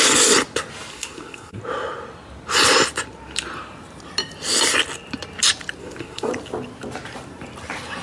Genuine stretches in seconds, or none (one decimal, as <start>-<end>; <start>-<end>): 0.0-0.9; 1.6-5.8; 6.3-8.0